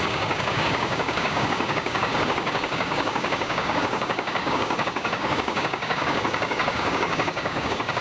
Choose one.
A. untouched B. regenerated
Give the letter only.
B